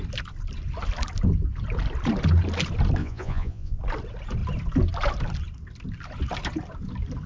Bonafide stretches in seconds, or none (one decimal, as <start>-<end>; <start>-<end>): 0.0-3.0; 3.8-7.3